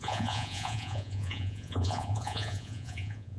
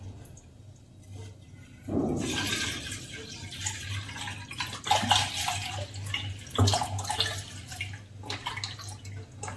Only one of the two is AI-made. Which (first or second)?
first